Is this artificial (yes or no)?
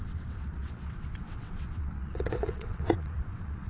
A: yes